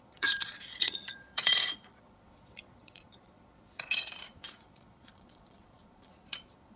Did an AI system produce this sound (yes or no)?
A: yes